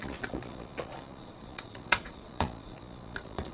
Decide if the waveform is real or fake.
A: fake